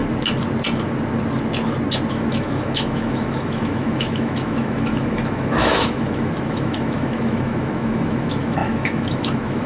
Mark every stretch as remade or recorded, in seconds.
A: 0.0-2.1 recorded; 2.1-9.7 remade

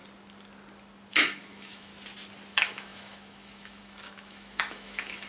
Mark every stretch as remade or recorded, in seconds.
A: 0.0-1.1 recorded; 1.1-1.9 remade; 1.9-2.5 recorded; 2.5-5.3 remade

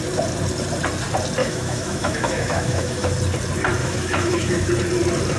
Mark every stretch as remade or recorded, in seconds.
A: 0.0-1.4 recorded; 1.4-3.1 remade; 3.1-3.8 recorded; 3.8-4.7 remade; 4.7-5.4 recorded

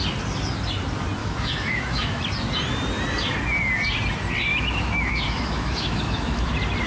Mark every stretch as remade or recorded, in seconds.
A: 0.0-1.2 recorded; 1.2-2.2 remade; 2.2-4.5 recorded; 4.5-6.5 remade; 6.5-6.9 recorded

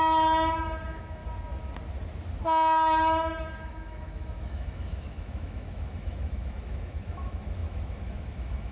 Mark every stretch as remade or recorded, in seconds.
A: 0.0-1.2 remade; 1.2-2.4 recorded; 2.4-8.7 remade